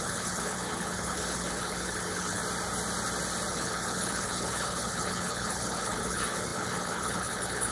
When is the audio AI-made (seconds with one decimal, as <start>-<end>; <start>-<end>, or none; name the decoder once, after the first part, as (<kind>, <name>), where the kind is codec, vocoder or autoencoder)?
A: 0.0-2.4 (codec, HILCodec); 3.5-7.7